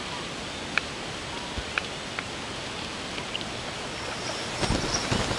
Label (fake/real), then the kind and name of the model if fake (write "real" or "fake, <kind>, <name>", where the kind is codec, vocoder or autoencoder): real